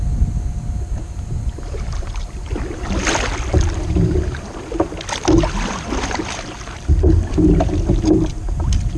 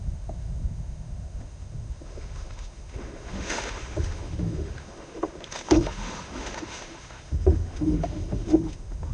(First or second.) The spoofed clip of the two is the second